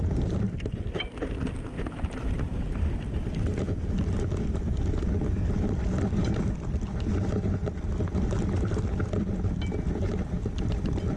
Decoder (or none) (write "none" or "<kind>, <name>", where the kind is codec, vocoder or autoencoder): none